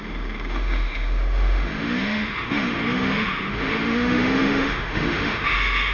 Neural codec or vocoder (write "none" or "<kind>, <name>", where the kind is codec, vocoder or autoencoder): autoencoder, DAC-VAE